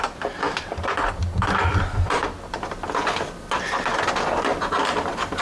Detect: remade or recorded remade